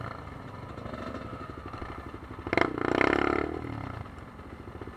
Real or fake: real